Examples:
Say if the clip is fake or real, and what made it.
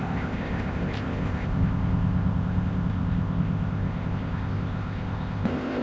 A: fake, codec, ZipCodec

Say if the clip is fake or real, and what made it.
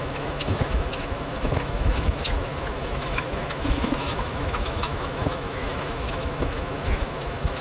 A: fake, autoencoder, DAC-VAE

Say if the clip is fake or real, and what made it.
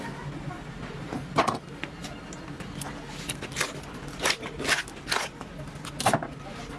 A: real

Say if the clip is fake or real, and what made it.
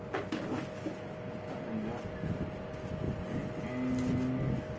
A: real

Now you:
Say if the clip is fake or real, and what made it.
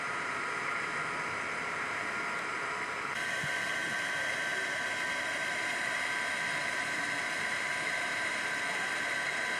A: fake, vocoder, BigVGAN v2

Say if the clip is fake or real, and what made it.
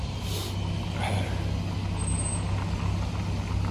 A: real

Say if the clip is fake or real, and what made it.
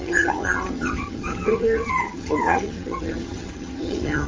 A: fake, vocoder, HiFi-GAN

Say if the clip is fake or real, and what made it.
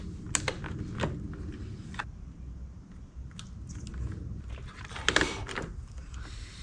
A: real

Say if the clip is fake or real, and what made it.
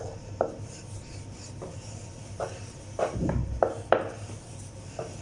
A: fake, vocoder, BigVGAN v2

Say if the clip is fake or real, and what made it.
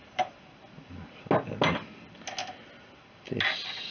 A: real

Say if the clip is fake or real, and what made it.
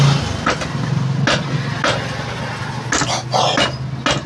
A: real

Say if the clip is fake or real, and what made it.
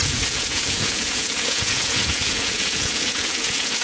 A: fake, vocoder, Vocos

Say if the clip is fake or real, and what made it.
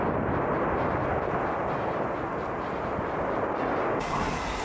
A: real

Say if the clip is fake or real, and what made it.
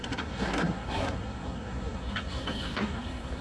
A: fake, codec, SNAC